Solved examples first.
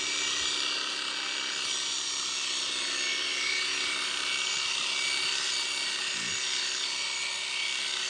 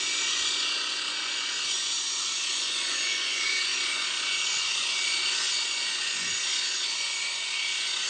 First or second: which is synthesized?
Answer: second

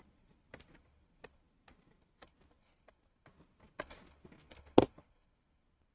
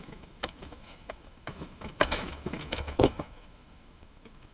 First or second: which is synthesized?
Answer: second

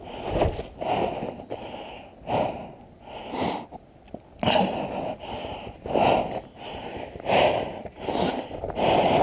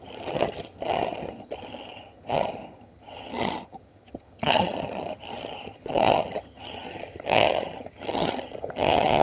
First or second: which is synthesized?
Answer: second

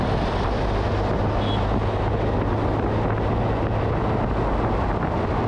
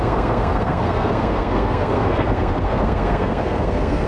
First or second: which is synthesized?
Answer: second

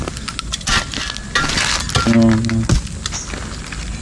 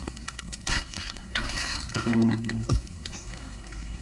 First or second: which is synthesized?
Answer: second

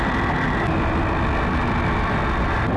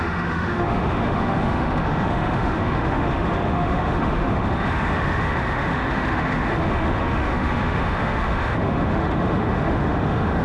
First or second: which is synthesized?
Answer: second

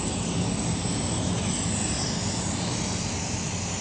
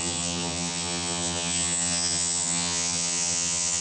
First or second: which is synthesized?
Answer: second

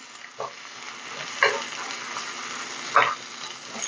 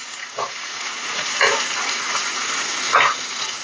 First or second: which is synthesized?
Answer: second